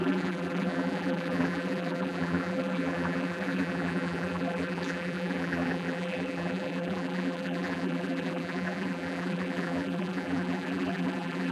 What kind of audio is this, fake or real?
fake